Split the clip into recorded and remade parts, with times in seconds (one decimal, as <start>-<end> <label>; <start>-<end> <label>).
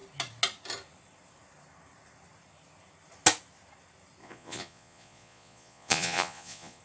0.0-4.2 recorded; 4.2-6.8 remade